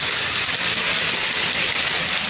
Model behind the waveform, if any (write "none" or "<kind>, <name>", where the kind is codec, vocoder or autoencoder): none